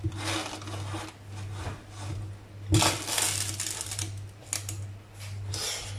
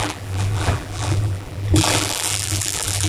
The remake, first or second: second